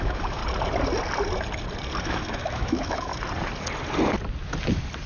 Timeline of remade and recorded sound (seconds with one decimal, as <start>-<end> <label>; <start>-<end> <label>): 0.0-0.4 remade; 0.4-2.0 recorded; 2.0-3.1 remade; 3.1-5.1 recorded